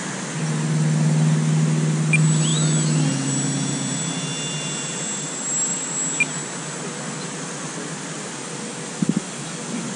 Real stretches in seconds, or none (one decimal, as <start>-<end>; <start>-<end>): 0.0-10.0